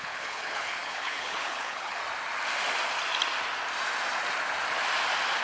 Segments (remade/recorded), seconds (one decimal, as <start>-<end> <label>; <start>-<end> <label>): 0.0-2.0 remade; 2.0-5.4 recorded